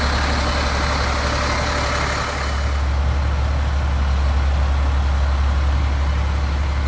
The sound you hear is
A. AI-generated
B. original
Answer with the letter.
B